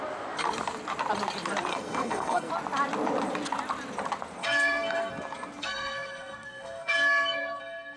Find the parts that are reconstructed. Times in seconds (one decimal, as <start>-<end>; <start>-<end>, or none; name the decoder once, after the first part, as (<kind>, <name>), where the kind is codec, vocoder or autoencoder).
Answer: 1.7-2.5 (codec, SNAC); 4.4-5.1; 5.6-7.6